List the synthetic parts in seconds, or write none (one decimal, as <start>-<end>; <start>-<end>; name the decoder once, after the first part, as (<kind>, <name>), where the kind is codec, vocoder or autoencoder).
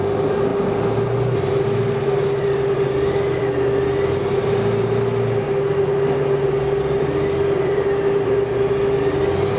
none